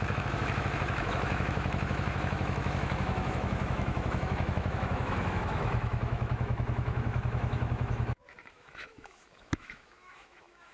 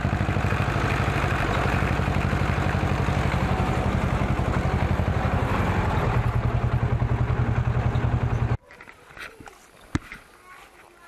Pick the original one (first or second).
second